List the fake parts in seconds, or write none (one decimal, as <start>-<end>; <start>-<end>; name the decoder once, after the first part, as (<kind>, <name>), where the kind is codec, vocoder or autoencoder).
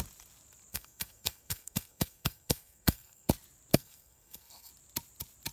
0.7-3.3 (codec, SNAC); 3.7-4.7